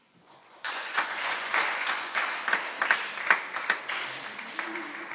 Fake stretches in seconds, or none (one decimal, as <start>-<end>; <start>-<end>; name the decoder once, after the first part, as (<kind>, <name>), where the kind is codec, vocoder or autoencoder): 0.0-2.2 (vocoder, Vocos)